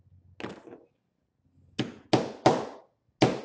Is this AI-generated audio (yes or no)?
no